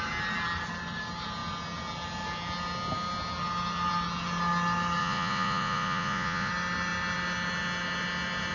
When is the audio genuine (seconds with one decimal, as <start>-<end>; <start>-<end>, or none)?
0.0-5.0; 6.5-8.5